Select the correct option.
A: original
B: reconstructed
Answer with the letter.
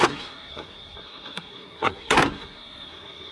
B